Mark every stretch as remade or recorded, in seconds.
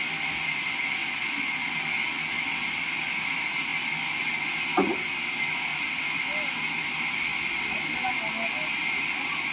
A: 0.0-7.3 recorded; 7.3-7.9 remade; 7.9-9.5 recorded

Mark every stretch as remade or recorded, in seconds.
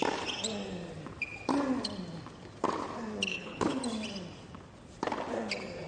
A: 0.0-3.3 recorded; 3.3-3.8 remade; 3.8-5.9 recorded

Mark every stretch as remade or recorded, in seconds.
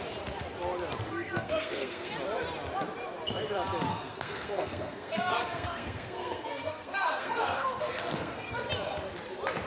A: 0.0-1.1 recorded; 1.1-2.1 remade; 2.1-3.9 recorded; 3.9-8.7 remade; 8.7-9.7 recorded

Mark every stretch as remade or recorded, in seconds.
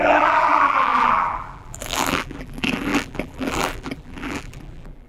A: 0.0-5.1 remade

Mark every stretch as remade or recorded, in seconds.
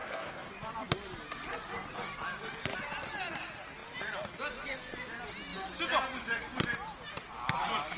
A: 0.0-0.5 remade; 0.5-8.0 recorded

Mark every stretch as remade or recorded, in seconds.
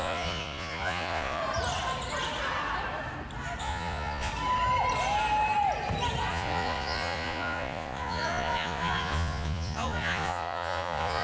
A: 0.0-1.4 remade; 1.4-3.6 recorded; 3.6-4.3 remade; 4.3-6.3 recorded; 6.3-11.2 remade